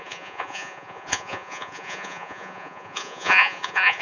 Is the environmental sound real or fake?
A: fake